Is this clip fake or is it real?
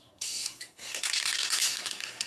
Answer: fake